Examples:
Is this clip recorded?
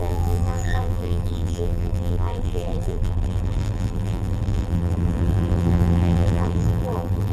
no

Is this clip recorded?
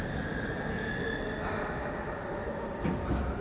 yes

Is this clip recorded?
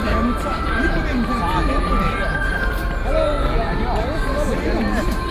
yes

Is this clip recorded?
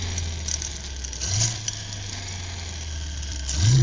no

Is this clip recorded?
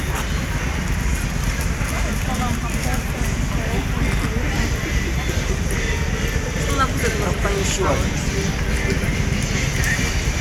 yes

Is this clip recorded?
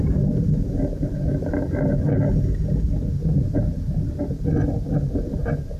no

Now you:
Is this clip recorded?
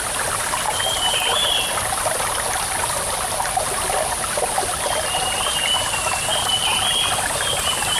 yes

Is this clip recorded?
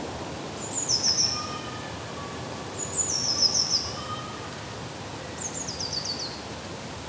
yes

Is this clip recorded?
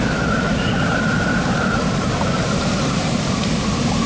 no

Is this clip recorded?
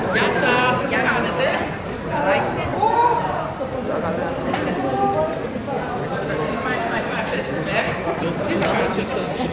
no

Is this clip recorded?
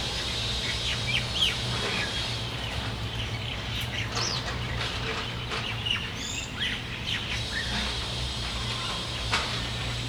no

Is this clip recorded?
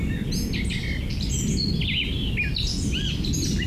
yes